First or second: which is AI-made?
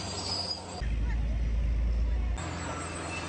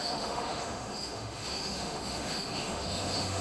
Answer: second